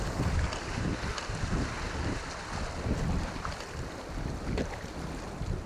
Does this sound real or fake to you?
real